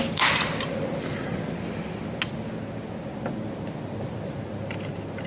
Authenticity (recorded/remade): recorded